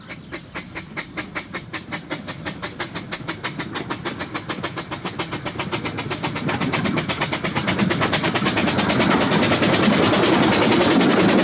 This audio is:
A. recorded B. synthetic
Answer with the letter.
A